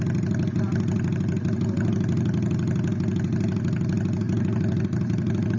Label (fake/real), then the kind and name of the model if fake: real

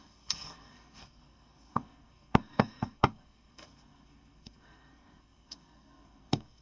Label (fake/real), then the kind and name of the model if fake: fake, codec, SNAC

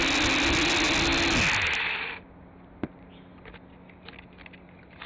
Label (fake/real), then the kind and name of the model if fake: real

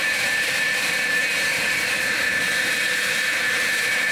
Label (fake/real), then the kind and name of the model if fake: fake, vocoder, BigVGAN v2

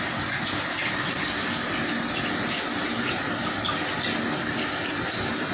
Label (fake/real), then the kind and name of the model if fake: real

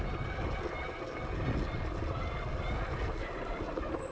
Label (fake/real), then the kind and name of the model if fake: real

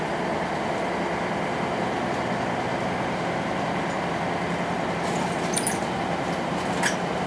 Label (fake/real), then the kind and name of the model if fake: real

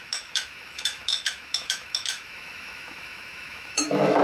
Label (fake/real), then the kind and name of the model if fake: fake, autoencoder, DAC-VAE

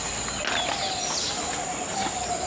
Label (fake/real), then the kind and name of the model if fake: real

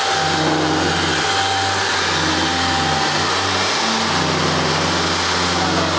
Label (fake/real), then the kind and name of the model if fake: real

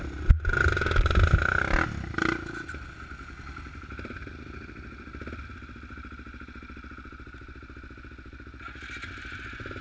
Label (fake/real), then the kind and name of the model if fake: real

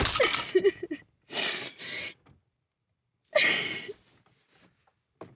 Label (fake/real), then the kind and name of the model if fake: real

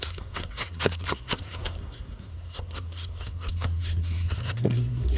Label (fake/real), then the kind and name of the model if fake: fake, codec, SNAC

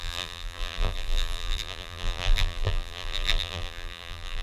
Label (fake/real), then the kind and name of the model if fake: fake, vocoder, BigVGAN v2